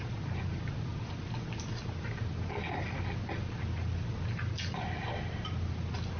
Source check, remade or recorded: recorded